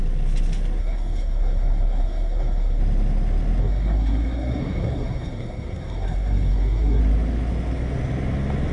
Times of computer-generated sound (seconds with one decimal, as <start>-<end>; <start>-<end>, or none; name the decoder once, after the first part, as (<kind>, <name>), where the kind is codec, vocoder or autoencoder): 0.8-2.8 (codec, SNAC); 3.6-7.0